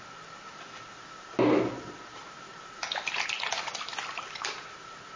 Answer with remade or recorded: recorded